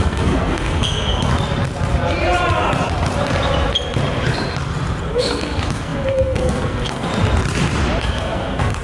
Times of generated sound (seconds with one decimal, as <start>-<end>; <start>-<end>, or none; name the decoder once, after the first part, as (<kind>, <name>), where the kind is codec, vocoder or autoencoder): 0.0-1.3 (codec, SNAC); 5.0-7.1; 8.0-8.8

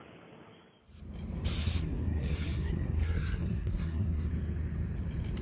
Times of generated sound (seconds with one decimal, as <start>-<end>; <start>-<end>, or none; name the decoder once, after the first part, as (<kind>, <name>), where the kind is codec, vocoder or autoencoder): 1.6-4.3 (codec, SNAC)